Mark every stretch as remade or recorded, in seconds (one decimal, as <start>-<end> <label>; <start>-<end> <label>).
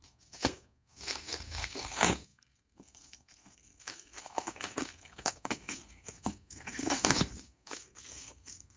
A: 0.0-8.8 remade